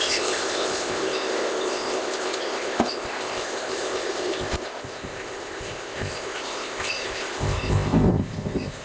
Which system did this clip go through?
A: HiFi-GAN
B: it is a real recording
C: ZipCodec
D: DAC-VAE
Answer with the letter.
C